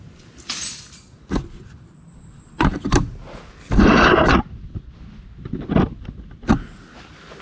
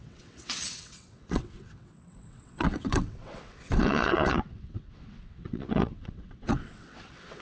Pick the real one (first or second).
first